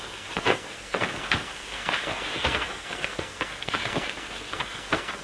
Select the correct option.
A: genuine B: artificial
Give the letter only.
B